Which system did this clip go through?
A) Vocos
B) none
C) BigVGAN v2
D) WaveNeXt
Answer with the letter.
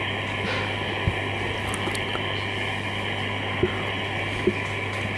B